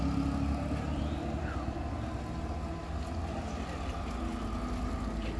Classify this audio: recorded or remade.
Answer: recorded